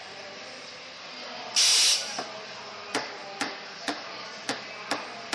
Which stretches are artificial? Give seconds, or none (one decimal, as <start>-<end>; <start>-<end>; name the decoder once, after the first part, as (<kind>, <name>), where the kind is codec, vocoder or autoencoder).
none

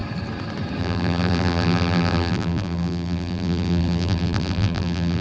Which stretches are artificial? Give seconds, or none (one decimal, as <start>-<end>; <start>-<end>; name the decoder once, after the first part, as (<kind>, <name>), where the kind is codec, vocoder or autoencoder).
0.8-5.2 (vocoder, BigVGAN v2)